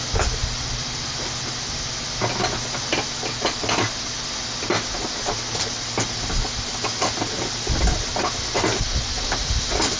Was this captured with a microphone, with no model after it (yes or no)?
yes